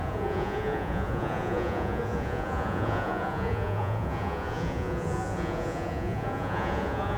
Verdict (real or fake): fake